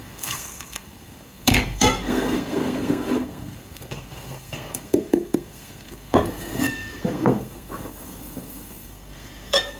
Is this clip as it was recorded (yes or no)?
no